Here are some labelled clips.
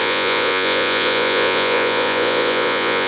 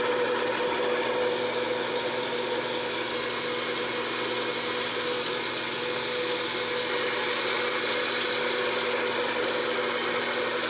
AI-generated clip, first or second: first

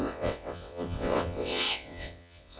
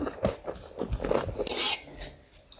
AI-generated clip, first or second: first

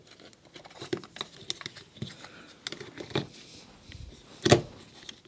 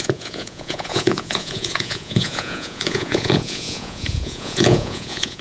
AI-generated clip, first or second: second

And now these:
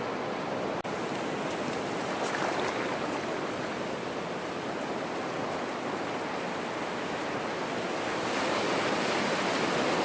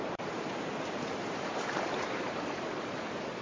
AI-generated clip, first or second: second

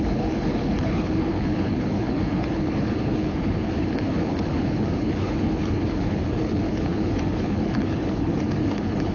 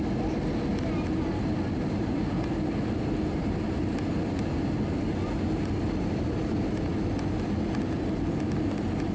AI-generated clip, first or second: first